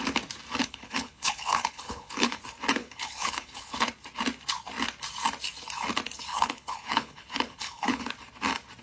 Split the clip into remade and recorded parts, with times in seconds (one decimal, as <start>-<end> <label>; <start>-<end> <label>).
0.0-0.6 recorded; 0.6-2.4 remade; 2.4-2.8 recorded; 2.8-3.9 remade; 3.9-6.3 recorded; 6.3-8.1 remade; 8.1-8.8 recorded